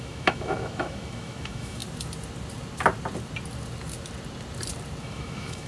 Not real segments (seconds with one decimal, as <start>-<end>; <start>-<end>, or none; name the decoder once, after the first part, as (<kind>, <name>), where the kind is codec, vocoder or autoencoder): 0.0-1.8 (autoencoder, DAC-VAE); 5.0-5.7